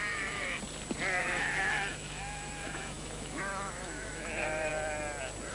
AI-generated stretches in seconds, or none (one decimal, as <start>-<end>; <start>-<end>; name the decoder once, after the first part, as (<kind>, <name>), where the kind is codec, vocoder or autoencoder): 0.0-0.6 (autoencoder, DAC-VAE); 1.2-4.7